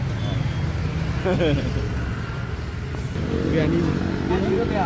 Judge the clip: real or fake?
real